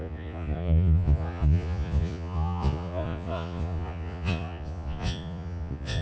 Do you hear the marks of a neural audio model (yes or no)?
yes